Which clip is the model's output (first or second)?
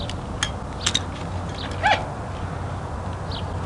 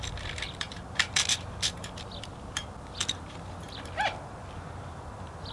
second